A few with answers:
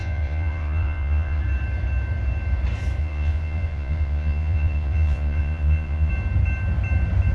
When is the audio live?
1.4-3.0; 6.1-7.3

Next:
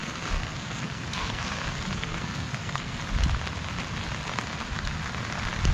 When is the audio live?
3.0-5.7